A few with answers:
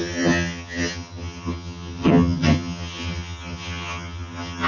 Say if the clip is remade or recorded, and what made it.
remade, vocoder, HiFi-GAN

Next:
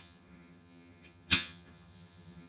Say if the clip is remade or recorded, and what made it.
remade, vocoder, HiFi-GAN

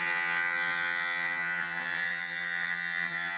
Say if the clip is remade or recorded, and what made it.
remade, vocoder, HiFi-GAN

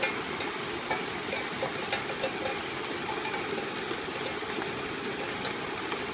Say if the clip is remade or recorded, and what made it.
recorded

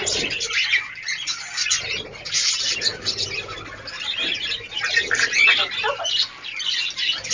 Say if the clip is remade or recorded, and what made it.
recorded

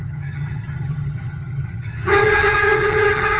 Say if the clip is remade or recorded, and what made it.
remade, vocoder, HiFi-GAN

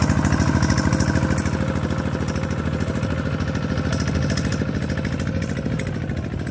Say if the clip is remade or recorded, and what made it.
recorded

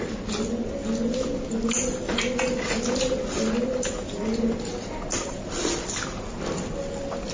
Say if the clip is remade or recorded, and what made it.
recorded